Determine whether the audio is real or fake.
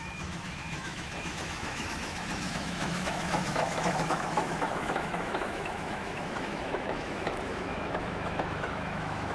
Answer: fake